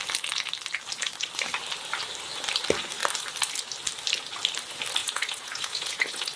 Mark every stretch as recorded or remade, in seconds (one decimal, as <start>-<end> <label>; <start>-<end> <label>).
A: 0.0-5.0 recorded; 5.0-6.4 remade